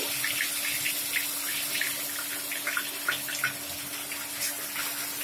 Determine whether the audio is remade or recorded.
recorded